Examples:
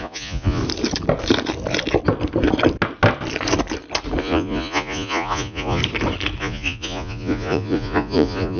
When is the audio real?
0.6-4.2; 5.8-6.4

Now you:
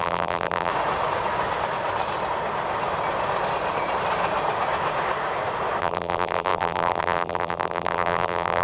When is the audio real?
0.7-5.8

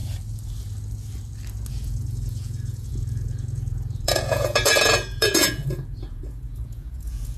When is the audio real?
0.0-1.7

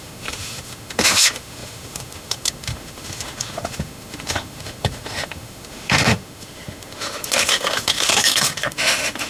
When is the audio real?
none

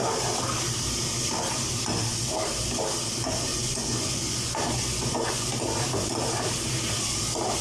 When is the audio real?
0.0-3.5; 5.5-7.6